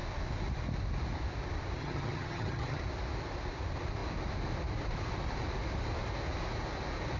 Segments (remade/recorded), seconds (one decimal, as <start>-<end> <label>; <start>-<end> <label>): 0.0-1.8 recorded; 1.8-2.8 remade; 2.8-7.2 recorded